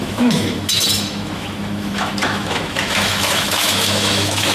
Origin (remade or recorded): remade